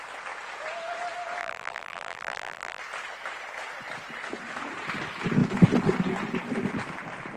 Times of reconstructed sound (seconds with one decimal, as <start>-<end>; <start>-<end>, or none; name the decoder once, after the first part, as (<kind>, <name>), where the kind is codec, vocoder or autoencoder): 1.4-2.8 (vocoder, BigVGAN v2)